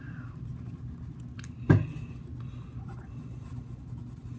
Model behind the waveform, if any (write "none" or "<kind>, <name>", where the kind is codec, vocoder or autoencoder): none